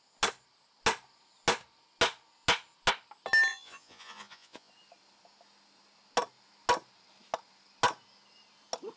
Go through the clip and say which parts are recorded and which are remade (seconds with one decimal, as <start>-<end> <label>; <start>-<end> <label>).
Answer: 0.0-3.5 recorded; 3.5-4.7 remade; 4.7-9.0 recorded